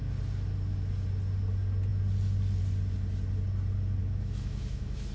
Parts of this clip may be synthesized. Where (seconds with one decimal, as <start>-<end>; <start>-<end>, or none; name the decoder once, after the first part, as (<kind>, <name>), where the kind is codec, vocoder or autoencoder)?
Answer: 4.0-5.1 (autoencoder, DAC-VAE)